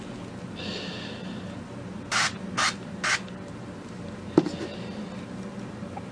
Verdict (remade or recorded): recorded